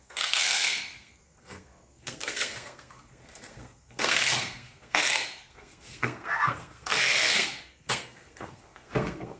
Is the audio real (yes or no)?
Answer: no